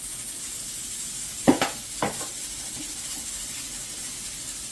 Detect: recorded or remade recorded